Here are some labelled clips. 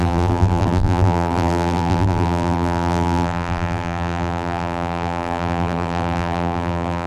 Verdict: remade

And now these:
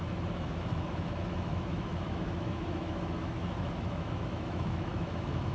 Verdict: remade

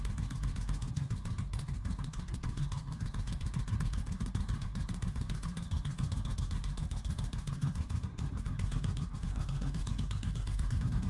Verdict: remade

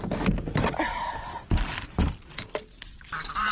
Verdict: recorded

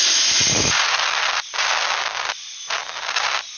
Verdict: recorded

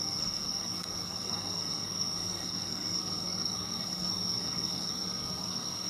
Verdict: remade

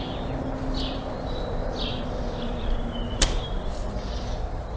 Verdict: remade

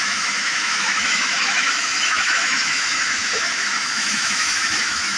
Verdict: remade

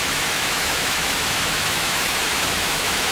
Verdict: remade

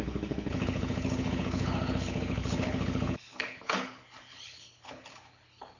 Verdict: remade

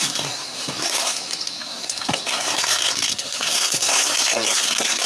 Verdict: remade